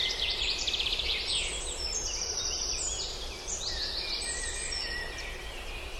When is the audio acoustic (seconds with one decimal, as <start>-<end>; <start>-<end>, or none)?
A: 1.0-6.0